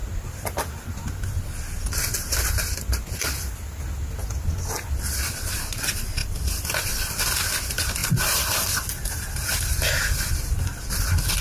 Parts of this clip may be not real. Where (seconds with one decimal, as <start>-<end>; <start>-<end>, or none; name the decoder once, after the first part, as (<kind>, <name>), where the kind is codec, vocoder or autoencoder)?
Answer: 6.2-6.9 (vocoder, BigVGAN v2); 8.0-11.4